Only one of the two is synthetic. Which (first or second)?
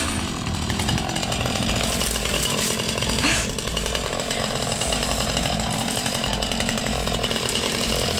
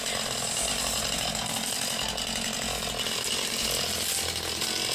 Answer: first